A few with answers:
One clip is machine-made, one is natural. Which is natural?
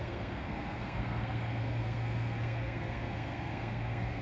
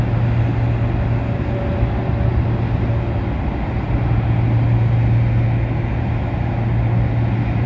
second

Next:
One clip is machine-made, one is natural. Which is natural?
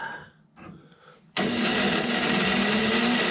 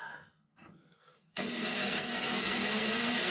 first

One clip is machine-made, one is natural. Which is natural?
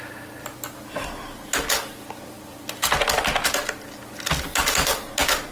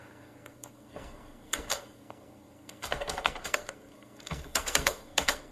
first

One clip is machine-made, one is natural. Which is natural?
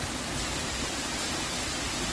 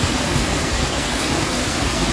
first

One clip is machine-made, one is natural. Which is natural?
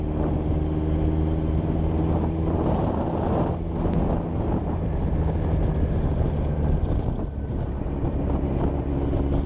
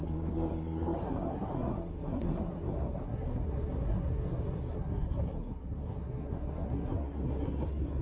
first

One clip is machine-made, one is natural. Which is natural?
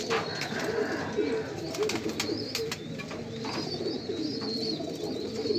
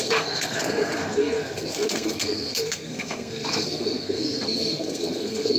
first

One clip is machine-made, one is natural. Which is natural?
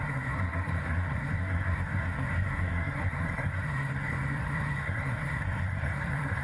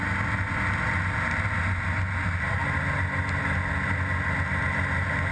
second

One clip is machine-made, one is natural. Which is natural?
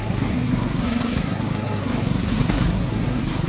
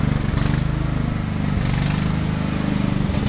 second